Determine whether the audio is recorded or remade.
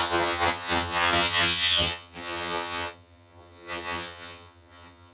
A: remade